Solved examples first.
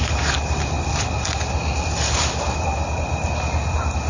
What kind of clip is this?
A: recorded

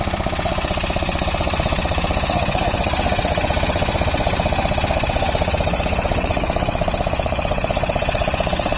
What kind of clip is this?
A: remade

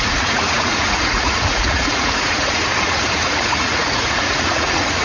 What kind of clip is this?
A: remade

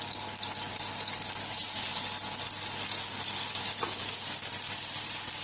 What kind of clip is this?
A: recorded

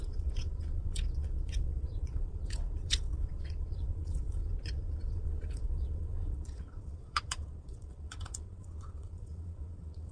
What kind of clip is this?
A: remade